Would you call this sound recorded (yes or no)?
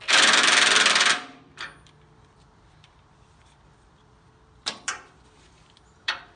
no